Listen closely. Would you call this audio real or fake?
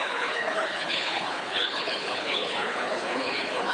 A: fake